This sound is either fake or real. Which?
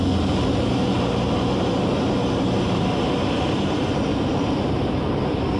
fake